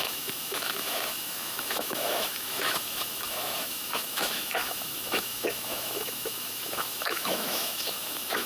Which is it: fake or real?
fake